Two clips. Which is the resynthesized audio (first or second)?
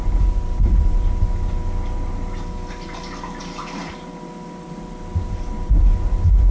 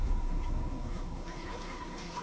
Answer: second